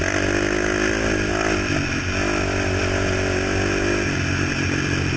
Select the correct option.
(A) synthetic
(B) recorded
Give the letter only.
B